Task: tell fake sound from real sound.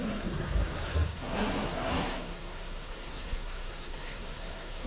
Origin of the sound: fake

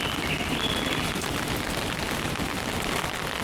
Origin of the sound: real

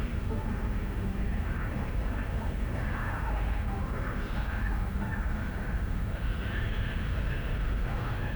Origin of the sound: fake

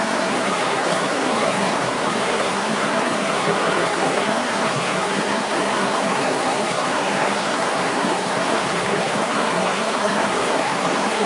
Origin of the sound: fake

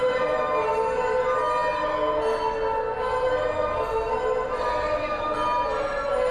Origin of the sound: real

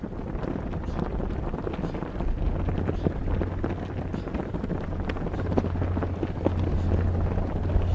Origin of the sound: real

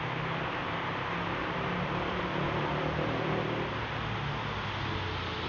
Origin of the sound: real